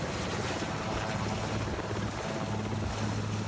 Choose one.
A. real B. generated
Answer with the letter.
A